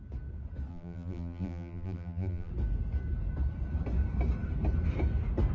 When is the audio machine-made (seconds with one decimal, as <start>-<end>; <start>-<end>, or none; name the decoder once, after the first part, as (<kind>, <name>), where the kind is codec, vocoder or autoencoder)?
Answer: 0.7-2.5 (vocoder, BigVGAN v2)

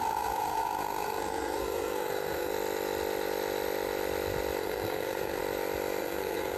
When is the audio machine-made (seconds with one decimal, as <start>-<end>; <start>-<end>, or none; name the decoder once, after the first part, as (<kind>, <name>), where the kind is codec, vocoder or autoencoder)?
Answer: 0.0-2.5 (codec, SNAC); 4.6-5.4; 6.0-6.6

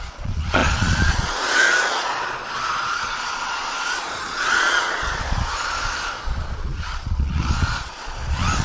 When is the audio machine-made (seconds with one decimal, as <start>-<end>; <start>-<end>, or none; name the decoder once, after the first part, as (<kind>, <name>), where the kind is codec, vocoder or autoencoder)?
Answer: 0.0-8.6 (vocoder, Vocos)

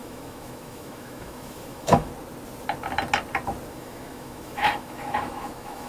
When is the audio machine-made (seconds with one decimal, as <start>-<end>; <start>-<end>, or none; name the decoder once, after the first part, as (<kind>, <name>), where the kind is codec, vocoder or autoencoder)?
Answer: 0.0-2.1 (autoencoder, DAC-VAE); 3.7-5.9

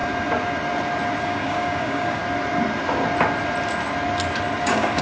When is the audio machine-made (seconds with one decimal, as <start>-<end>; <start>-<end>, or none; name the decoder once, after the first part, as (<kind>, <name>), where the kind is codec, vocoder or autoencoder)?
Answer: 1.2-2.2 (codec, DAC); 4.6-5.0

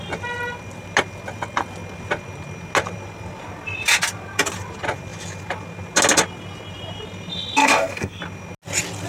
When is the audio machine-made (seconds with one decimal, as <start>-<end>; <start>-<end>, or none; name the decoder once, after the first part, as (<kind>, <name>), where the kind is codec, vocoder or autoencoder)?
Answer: 7.6-8.2 (codec, SNAC)

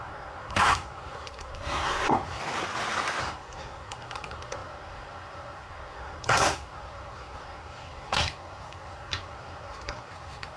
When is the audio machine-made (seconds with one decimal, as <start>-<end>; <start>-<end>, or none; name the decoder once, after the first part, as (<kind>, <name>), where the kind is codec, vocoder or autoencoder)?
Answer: 0.0-2.4 (codec, SNAC); 3.2-10.6

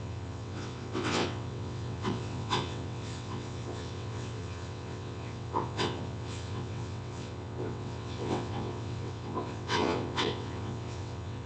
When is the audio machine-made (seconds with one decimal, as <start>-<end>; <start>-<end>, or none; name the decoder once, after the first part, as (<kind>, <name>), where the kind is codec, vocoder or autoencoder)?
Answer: 0.0-11.5 (vocoder, WaveNeXt)